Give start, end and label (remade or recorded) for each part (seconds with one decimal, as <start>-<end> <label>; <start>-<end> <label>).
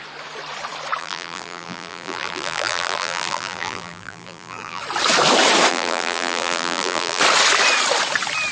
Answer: 0.0-1.0 recorded; 1.0-4.8 remade; 4.8-5.7 recorded; 5.7-7.2 remade; 7.2-8.5 recorded